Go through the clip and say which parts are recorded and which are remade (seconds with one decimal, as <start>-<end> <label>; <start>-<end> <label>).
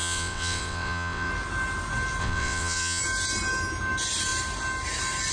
0.0-1.3 remade; 1.3-2.2 recorded; 2.2-3.0 remade; 3.0-5.3 recorded